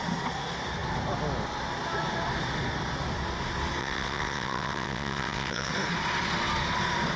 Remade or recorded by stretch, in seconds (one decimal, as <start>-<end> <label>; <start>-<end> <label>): 0.0-3.8 recorded; 3.8-5.7 remade; 5.7-7.2 recorded